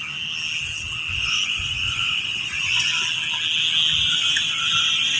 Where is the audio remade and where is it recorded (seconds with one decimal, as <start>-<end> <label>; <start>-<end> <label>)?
0.0-1.1 recorded; 1.1-2.9 remade; 2.9-5.2 recorded